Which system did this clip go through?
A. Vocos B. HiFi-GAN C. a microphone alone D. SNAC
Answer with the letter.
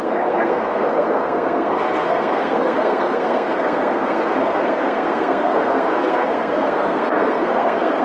D